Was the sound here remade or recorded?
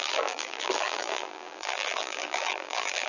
remade